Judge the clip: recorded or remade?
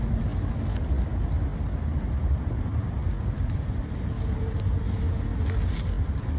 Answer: recorded